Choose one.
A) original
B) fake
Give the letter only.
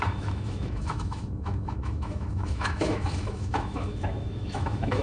B